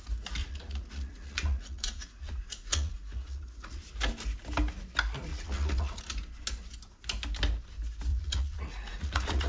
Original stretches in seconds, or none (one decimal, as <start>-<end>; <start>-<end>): 0.0-0.4; 3.8-5.3; 6.0-8.1